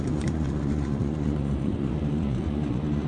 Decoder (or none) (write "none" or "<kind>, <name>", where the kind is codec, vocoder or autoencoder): vocoder, Vocos